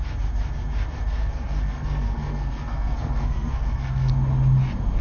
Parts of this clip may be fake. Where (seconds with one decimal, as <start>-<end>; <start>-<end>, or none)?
1.2-4.1

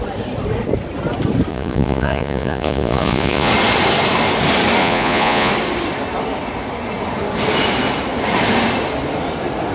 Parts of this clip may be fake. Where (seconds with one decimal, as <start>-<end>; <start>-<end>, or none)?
1.5-3.5; 4.8-5.5

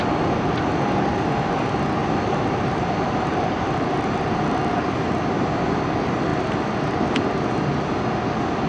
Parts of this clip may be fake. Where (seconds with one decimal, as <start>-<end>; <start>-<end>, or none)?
2.0-5.4

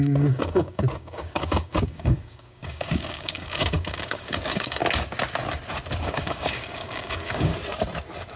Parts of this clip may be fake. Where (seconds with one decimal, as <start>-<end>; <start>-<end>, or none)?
0.0-4.8; 6.0-7.5

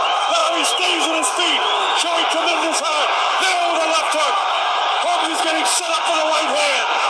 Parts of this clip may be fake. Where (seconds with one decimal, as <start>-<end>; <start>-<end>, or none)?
0.0-3.5; 4.0-7.1